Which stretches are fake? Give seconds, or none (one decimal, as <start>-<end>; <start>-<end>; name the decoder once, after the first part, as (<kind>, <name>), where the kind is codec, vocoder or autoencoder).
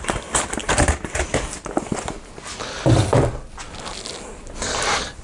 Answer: none